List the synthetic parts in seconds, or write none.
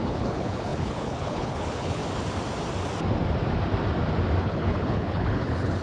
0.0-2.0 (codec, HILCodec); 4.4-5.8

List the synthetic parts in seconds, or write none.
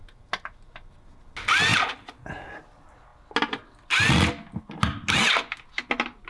none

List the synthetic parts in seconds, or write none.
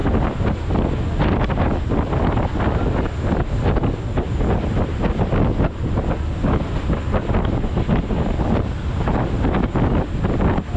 none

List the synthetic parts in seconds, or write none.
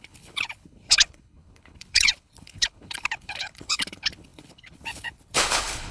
0.0-5.9 (codec, HILCodec)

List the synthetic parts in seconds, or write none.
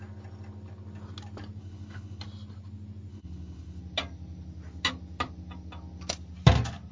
1.6-2.2 (codec, HILCodec); 3.1-3.8